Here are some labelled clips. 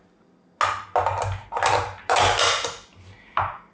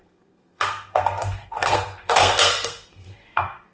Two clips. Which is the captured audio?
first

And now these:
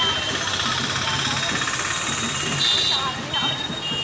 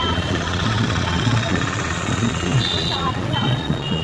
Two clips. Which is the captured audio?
first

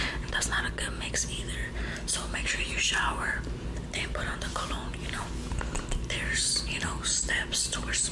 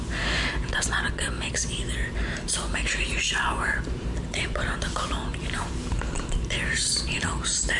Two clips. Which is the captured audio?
first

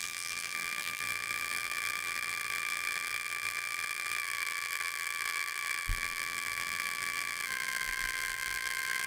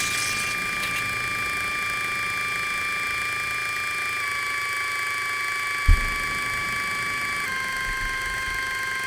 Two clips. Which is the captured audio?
second